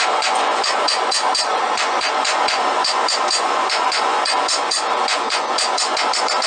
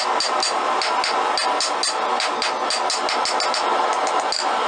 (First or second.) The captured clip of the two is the second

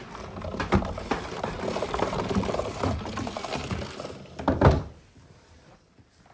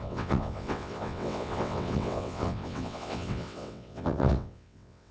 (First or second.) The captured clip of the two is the first